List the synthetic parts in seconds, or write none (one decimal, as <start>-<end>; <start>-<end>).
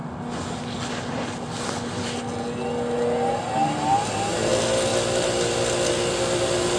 none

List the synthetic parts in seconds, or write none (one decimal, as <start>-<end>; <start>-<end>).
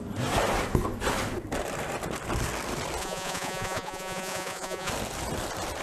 3.0-4.9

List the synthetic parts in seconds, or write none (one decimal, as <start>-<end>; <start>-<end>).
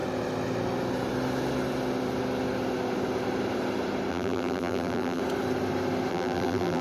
4.1-5.2; 6.1-6.8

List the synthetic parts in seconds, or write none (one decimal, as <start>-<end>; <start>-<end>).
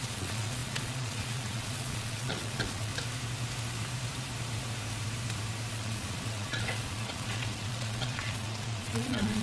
0.0-2.9; 5.7-9.4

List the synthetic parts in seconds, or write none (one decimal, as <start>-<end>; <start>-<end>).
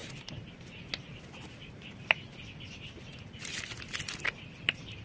none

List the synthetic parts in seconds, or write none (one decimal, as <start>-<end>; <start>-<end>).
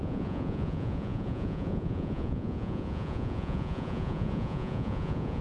0.0-5.4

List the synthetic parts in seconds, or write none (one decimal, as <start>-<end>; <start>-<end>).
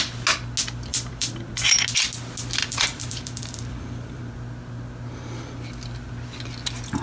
0.9-1.5; 2.6-4.3